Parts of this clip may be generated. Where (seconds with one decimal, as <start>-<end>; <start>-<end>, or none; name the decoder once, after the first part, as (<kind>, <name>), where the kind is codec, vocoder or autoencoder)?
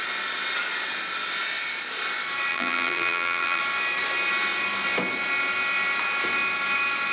2.5-3.6 (vocoder, BigVGAN v2)